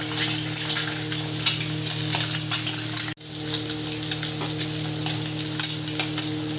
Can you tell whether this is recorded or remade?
recorded